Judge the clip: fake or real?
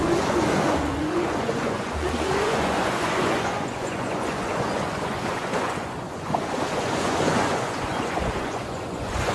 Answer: fake